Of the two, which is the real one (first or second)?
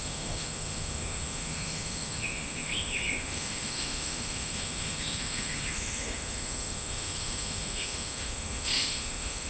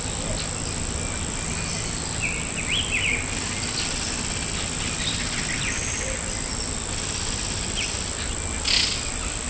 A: second